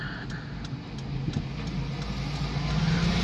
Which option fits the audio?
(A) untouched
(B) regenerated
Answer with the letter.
A